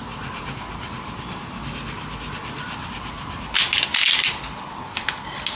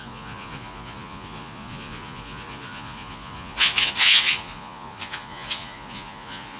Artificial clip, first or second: second